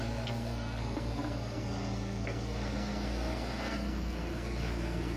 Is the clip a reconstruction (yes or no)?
yes